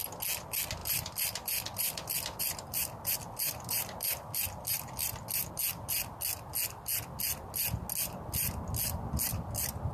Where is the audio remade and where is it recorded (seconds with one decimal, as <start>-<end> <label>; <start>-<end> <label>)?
0.0-0.8 recorded; 0.8-5.5 remade; 5.5-9.9 recorded